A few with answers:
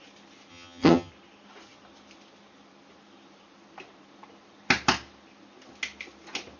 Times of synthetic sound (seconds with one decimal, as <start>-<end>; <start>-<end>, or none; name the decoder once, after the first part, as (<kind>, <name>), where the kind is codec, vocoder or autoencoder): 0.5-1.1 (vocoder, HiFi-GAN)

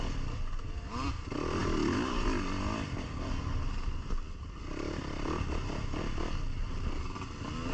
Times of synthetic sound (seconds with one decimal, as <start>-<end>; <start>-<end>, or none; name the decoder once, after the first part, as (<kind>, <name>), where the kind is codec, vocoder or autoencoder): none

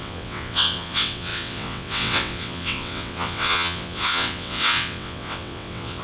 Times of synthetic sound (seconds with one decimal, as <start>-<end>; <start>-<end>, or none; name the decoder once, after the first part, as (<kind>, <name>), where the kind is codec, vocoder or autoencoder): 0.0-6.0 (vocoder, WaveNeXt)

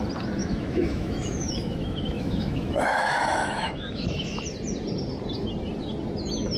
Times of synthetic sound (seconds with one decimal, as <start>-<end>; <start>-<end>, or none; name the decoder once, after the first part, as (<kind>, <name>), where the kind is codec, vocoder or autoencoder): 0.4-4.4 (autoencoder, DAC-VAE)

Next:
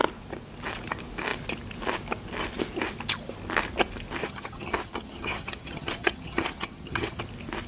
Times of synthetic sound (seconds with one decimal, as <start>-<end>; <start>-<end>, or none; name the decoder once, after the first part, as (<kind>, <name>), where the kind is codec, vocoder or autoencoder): 4.2-7.2 (vocoder, HiFi-GAN)

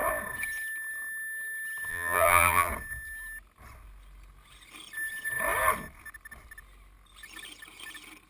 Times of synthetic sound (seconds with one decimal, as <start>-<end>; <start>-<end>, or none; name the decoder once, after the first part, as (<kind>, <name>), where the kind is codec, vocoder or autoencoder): 1.9-2.7 (vocoder, BigVGAN v2)

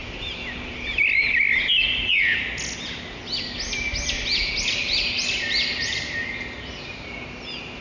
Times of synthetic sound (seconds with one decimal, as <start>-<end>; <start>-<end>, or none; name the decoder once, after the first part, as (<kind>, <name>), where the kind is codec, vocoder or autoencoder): none

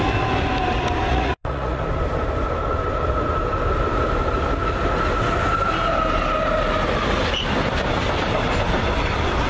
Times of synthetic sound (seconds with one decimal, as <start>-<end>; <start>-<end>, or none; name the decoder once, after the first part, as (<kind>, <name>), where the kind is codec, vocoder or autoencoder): 1.1-1.8 (vocoder, Vocos)